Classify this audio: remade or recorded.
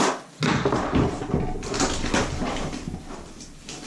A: recorded